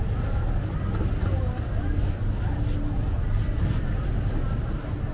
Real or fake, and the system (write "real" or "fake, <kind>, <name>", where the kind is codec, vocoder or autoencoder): real